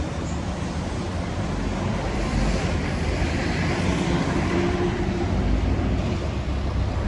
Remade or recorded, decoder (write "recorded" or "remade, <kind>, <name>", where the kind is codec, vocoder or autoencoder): remade, vocoder, BigVGAN v2